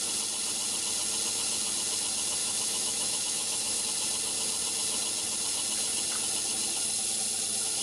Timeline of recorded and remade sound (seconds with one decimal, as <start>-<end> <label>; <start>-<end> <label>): 0.0-2.4 recorded; 2.4-3.8 remade; 3.8-7.8 recorded